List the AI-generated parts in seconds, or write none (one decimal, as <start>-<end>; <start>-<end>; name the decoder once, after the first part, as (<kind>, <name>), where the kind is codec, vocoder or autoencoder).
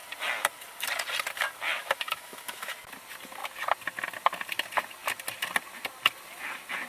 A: 1.8-2.7 (autoencoder, DAC-VAE)